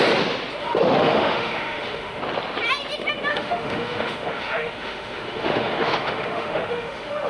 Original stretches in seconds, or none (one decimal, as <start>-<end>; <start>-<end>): 0.0-0.6; 2.2-3.3